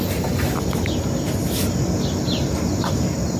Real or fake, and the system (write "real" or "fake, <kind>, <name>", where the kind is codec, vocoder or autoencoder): real